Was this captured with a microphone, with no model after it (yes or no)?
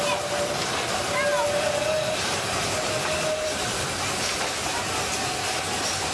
yes